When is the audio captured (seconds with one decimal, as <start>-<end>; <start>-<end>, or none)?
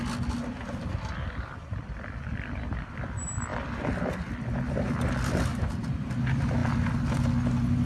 0.0-5.5; 6.1-7.9